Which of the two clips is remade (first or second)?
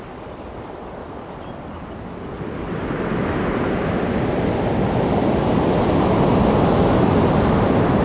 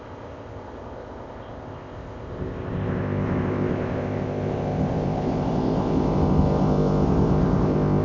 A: second